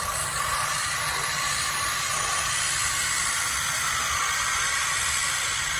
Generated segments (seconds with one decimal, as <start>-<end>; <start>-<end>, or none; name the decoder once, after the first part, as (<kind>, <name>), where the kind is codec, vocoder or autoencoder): none